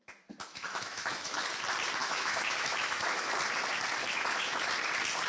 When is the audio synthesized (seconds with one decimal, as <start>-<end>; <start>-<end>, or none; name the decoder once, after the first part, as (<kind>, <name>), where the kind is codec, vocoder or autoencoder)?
0.5-1.4 (autoencoder, DAC-VAE); 2.0-3.3; 4.0-4.7